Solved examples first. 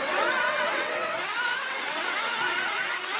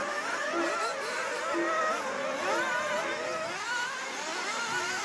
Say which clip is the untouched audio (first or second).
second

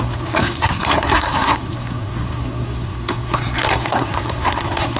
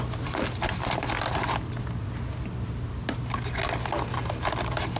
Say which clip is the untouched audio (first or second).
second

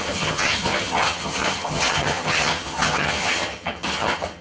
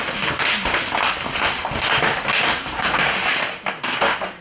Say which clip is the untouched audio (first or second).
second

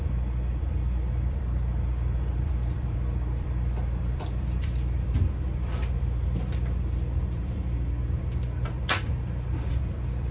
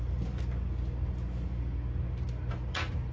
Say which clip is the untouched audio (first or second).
second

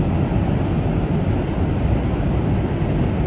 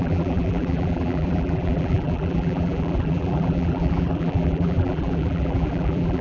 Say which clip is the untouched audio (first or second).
first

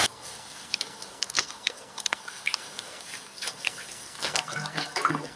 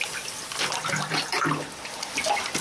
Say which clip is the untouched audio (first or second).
second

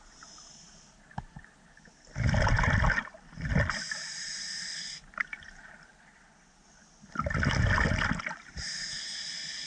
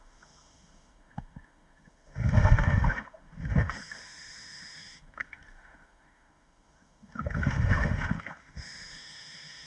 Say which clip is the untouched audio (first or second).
first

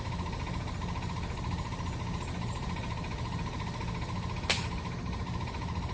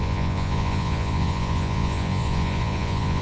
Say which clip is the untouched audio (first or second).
first